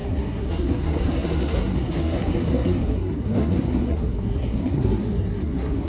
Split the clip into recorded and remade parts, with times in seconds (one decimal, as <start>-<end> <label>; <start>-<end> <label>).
0.0-5.9 remade